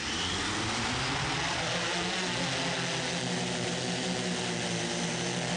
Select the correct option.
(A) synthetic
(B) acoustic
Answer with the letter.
B